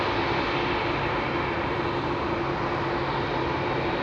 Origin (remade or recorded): recorded